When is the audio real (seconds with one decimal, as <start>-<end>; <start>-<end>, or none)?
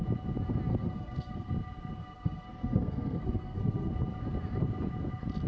0.0-0.7; 1.5-2.0; 3.9-5.5